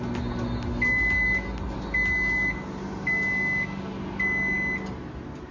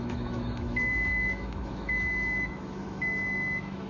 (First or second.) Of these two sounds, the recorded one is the first